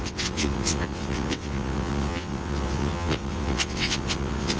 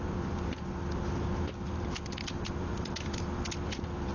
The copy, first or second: first